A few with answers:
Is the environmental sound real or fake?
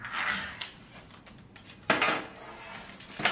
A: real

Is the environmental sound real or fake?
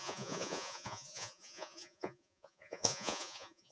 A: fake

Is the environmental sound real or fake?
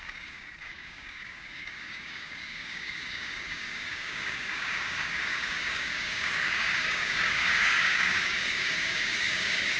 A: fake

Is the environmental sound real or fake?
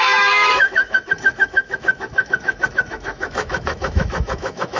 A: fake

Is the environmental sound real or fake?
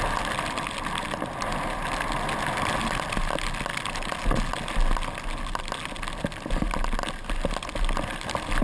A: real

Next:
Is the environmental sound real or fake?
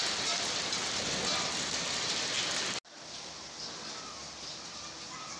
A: real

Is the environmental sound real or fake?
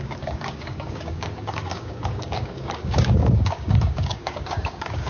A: fake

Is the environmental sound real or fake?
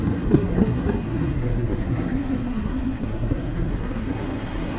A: fake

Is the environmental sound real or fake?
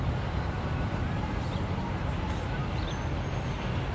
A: fake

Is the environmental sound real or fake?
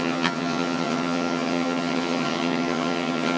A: fake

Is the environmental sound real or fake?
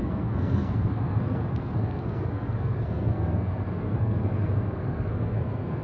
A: fake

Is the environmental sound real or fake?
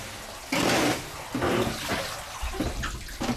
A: real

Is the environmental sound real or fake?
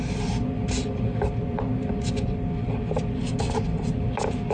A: real